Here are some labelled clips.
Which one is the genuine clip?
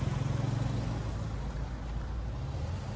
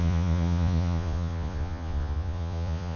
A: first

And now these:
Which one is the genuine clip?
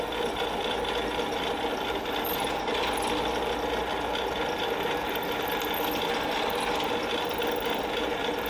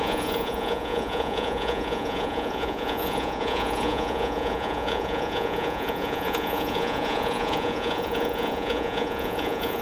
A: first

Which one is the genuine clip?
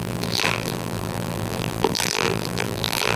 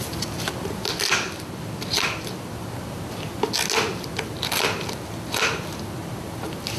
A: second